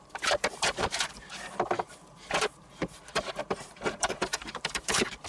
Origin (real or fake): fake